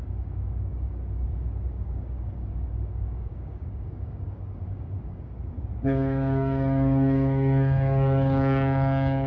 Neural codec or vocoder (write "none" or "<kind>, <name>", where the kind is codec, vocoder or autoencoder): codec, DAC